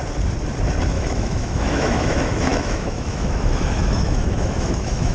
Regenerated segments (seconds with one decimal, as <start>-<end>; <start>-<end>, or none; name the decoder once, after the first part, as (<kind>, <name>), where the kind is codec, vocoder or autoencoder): 0.9-5.1 (autoencoder, DAC-VAE)

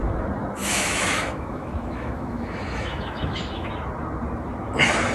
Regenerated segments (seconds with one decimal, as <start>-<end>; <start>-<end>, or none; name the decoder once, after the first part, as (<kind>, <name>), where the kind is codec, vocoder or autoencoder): 0.6-3.7 (autoencoder, DAC-VAE)